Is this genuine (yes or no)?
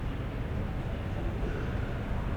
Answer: yes